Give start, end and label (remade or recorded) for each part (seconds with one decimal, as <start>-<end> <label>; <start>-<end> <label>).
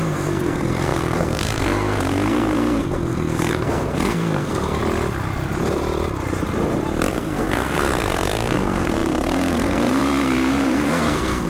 0.0-4.8 remade; 4.8-7.1 recorded; 7.1-11.5 remade